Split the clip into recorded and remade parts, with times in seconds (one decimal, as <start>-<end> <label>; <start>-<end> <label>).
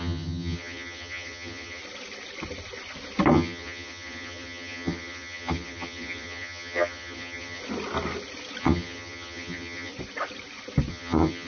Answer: 0.0-1.8 remade; 1.8-3.3 recorded; 3.3-7.6 remade; 7.6-8.6 recorded; 8.6-9.9 remade; 9.9-10.9 recorded; 10.9-11.5 remade